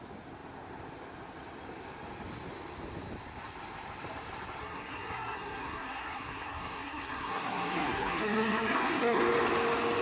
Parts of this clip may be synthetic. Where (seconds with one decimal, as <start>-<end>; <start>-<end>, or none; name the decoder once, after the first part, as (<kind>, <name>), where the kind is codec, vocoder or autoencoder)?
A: 4.6-9.2 (codec, SNAC)